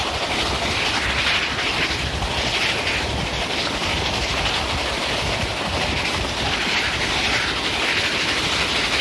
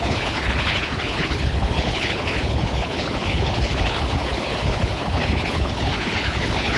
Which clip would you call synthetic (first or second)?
second